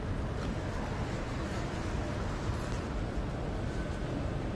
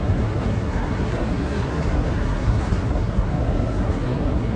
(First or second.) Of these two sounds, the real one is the first